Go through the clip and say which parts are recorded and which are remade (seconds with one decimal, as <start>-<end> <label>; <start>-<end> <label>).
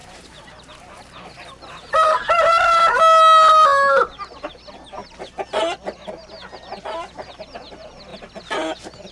0.0-3.0 remade; 3.0-9.1 recorded